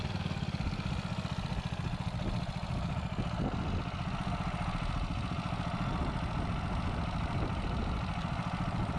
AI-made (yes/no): no